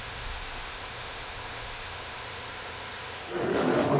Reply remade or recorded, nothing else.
remade